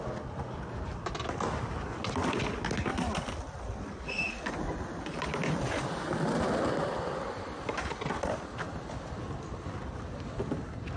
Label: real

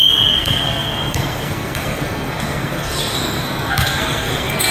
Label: fake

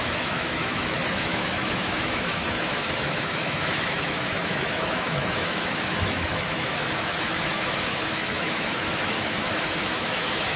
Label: fake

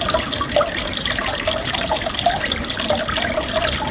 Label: real